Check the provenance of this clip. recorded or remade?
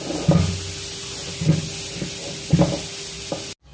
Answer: recorded